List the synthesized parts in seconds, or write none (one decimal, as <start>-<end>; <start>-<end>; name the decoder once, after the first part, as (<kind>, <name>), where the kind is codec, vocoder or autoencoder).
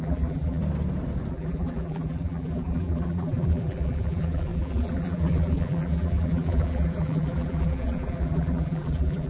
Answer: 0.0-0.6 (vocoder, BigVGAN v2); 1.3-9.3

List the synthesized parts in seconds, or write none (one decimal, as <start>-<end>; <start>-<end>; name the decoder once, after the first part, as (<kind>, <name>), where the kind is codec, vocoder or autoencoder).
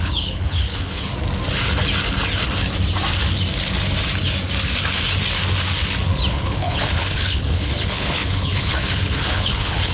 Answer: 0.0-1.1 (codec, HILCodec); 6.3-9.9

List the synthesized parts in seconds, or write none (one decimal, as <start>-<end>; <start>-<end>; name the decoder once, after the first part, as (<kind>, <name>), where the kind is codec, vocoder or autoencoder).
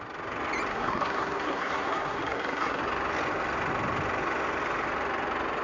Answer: 0.7-2.8 (codec, SNAC)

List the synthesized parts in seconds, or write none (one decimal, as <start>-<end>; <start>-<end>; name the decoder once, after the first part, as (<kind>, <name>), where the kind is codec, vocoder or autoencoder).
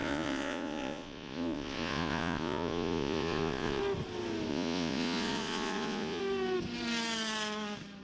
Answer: 0.0-3.8 (vocoder, Vocos); 4.5-6.2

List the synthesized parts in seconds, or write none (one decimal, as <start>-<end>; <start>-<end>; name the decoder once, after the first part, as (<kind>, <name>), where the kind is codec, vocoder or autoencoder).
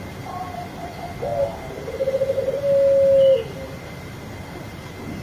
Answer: none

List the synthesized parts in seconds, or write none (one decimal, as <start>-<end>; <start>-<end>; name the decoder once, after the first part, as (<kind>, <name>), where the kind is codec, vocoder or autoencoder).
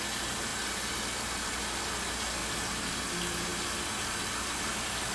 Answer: none